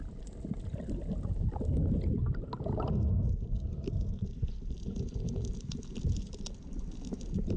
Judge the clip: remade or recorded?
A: recorded